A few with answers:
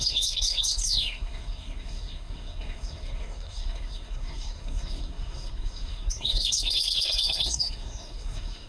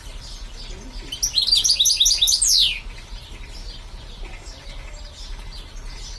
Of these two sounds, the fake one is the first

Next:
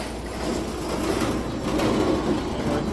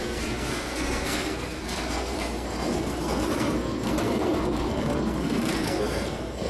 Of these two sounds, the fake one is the second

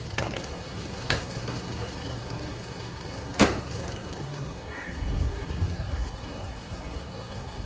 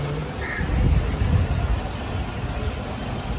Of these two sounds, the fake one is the first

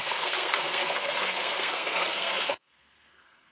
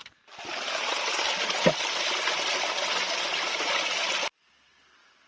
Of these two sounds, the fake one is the first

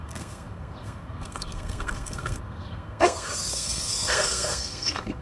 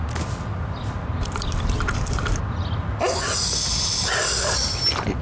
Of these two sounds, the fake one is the first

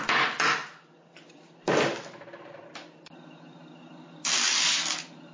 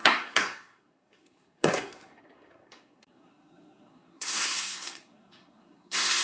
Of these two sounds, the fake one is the second